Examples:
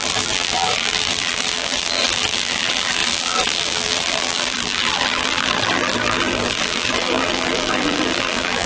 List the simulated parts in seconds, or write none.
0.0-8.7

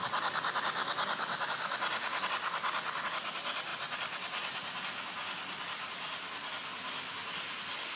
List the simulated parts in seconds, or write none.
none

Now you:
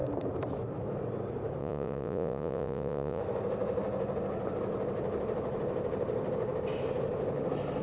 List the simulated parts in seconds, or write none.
1.6-3.2

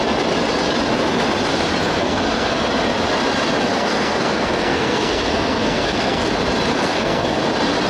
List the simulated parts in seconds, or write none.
2.0-2.7; 3.7-6.3; 6.7-7.4

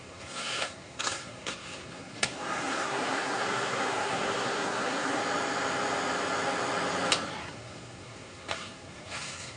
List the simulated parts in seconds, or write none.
0.0-5.2; 7.4-9.6

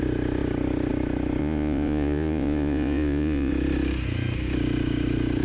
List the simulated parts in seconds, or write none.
1.4-3.5